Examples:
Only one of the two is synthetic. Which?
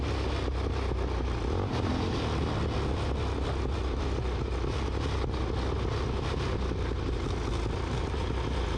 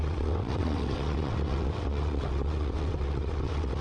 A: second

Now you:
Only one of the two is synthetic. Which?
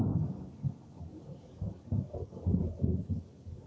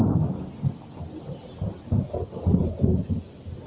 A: first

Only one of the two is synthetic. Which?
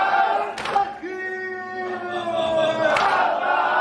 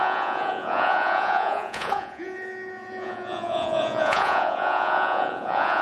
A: second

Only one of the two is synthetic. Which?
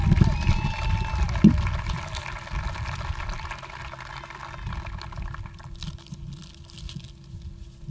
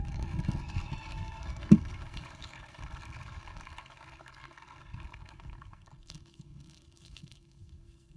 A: second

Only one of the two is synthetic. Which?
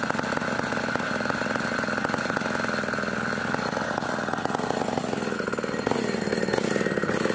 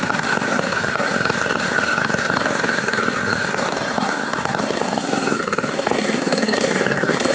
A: second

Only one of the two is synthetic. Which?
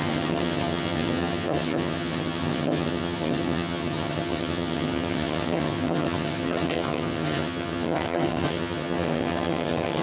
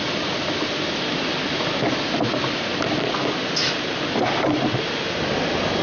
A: first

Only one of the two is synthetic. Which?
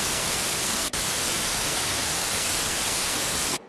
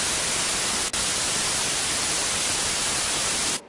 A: first